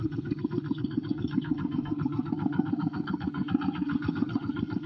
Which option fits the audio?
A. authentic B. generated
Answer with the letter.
B